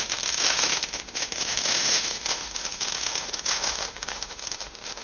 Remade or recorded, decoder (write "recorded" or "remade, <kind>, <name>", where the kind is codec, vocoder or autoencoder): remade, autoencoder, DAC-VAE